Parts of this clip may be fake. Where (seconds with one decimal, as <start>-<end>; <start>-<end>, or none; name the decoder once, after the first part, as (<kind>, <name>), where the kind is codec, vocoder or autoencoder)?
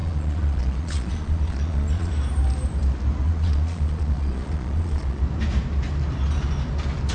0.0-2.1 (vocoder, Vocos); 3.2-5.2